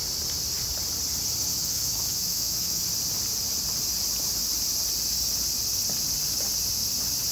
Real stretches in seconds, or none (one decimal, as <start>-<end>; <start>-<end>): 0.0-1.5; 2.8-7.3